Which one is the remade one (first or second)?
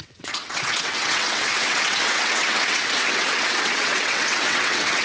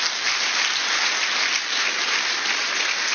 first